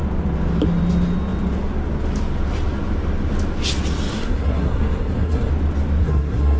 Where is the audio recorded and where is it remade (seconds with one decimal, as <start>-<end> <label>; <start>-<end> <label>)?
0.0-4.1 recorded; 4.1-5.5 remade; 5.5-6.0 recorded; 6.0-6.6 remade